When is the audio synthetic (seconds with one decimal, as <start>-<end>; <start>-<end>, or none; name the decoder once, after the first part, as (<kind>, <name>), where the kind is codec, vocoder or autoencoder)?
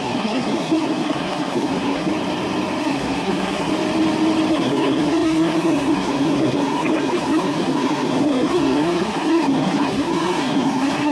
0.0-2.1 (codec, SNAC); 2.8-3.7; 4.5-11.1